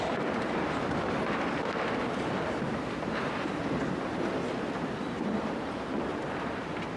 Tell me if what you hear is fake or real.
real